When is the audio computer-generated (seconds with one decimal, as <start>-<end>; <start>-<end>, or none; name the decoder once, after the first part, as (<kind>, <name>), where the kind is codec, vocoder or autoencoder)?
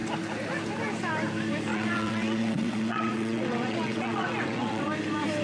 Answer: 1.7-4.9 (vocoder, WaveNeXt)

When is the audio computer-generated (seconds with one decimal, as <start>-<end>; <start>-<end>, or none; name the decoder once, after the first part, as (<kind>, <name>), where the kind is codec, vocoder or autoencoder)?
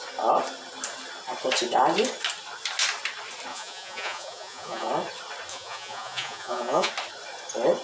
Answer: 3.5-4.9 (vocoder, Vocos); 5.5-6.9